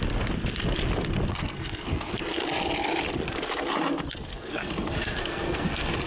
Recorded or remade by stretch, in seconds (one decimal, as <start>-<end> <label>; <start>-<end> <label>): 0.0-1.3 recorded; 1.3-2.1 remade; 2.1-4.3 recorded; 4.3-6.1 remade